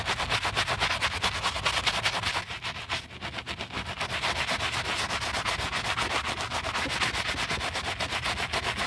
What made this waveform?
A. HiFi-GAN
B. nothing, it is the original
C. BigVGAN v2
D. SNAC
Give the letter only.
B